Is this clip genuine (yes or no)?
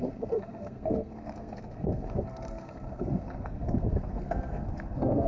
no